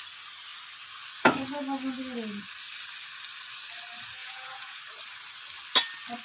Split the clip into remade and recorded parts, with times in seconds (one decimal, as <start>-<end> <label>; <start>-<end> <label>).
0.0-4.2 recorded; 4.2-4.8 remade; 4.8-6.2 recorded